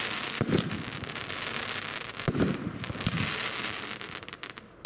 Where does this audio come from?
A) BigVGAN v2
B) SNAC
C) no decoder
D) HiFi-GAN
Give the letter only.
C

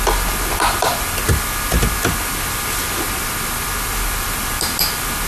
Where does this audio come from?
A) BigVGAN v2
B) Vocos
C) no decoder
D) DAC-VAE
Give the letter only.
C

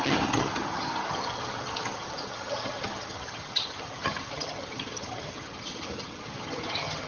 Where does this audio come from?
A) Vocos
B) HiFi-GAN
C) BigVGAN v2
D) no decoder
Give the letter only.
B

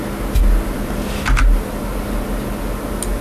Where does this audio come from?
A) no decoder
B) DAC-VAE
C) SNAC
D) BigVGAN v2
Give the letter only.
A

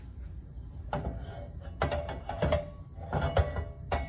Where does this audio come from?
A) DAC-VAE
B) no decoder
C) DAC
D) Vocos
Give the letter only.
B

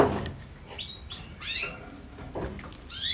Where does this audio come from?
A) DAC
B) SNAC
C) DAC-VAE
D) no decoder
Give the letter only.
D